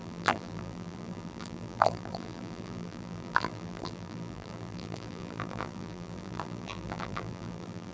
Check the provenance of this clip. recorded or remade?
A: remade